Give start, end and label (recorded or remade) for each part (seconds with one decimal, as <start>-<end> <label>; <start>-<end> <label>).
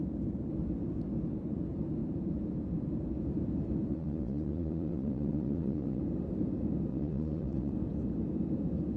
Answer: 0.0-3.9 recorded; 3.9-6.0 remade; 6.0-6.9 recorded; 6.9-7.7 remade; 7.7-9.0 recorded